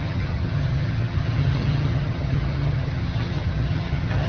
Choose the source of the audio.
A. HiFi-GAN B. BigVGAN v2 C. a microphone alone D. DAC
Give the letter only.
A